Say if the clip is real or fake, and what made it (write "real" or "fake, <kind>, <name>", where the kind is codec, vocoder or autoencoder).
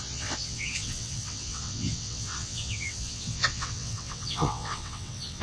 fake, vocoder, WaveNeXt